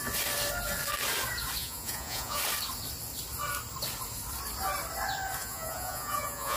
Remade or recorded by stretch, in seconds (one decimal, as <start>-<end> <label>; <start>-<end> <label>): 0.0-1.6 recorded; 1.6-2.4 remade; 2.4-5.4 recorded; 5.4-6.6 remade